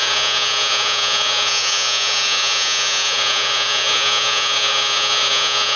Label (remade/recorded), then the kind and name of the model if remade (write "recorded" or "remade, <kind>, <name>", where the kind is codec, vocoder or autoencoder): remade, vocoder, Vocos